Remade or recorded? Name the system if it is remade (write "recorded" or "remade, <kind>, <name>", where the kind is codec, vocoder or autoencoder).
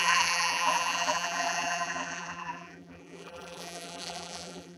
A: remade, vocoder, BigVGAN v2